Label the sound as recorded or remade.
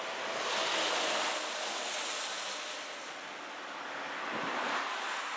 recorded